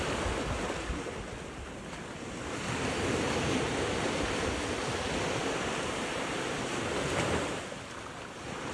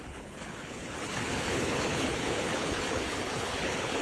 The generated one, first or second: second